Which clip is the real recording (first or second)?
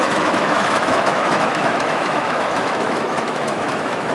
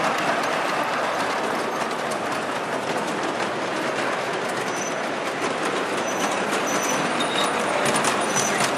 second